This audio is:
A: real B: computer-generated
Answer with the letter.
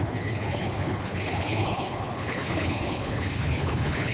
B